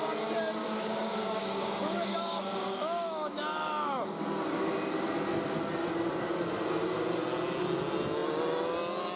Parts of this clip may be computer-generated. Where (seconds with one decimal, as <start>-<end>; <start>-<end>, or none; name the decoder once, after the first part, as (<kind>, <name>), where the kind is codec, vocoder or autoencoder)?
0.6-4.2 (codec, DAC)